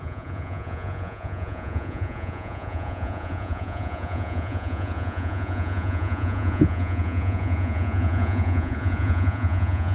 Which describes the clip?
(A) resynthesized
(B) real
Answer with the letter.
A